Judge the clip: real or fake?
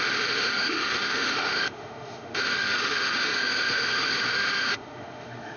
fake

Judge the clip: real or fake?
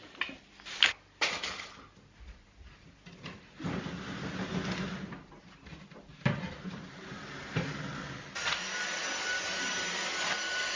real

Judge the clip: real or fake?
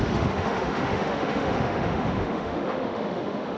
fake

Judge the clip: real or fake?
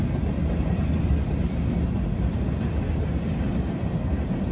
real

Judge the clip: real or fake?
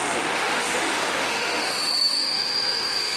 fake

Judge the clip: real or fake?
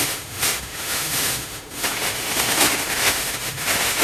fake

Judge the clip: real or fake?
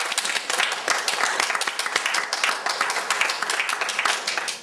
real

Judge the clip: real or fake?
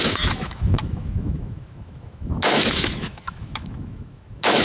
fake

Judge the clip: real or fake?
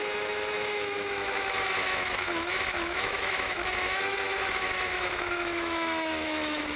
fake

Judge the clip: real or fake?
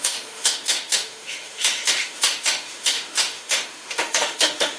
fake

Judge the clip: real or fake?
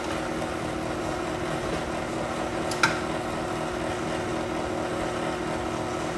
real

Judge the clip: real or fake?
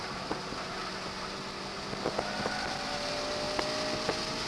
real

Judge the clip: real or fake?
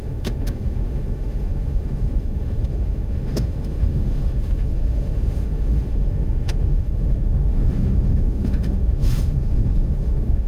fake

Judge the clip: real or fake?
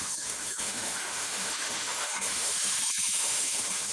fake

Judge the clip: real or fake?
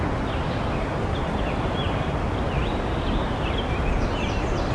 real